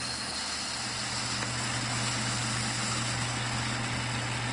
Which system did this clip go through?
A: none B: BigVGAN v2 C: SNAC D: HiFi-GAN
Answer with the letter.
A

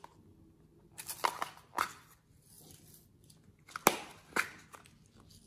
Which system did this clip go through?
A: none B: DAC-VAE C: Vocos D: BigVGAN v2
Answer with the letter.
A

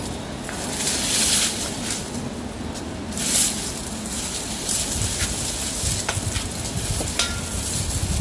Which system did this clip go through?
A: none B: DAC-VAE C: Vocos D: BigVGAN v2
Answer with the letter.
A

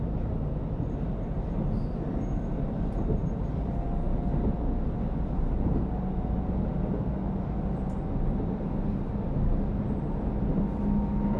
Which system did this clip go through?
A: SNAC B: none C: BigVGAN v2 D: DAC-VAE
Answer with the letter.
B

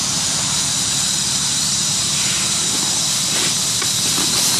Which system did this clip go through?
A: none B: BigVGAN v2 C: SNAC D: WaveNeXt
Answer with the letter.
A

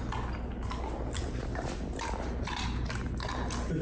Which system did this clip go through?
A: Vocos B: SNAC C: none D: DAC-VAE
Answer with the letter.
C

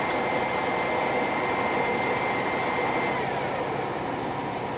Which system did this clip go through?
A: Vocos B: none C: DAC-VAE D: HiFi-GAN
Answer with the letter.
B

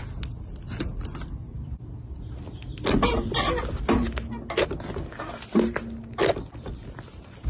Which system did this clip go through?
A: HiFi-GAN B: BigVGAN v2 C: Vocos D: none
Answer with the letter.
D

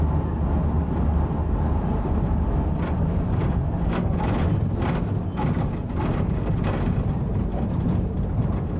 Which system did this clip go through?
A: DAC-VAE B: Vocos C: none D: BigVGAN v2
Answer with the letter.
C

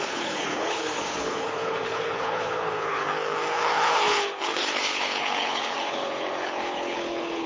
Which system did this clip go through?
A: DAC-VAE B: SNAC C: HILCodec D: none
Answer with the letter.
C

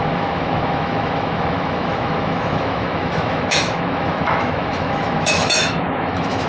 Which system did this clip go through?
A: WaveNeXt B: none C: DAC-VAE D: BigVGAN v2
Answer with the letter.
C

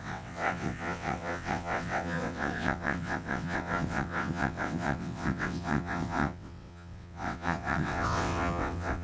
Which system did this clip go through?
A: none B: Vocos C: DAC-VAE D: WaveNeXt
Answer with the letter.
D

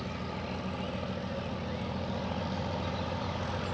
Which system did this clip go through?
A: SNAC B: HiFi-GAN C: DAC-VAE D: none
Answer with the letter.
D